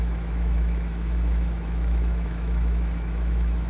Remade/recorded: remade